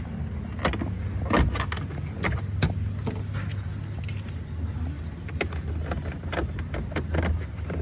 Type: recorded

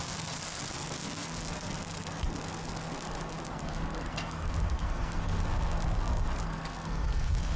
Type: remade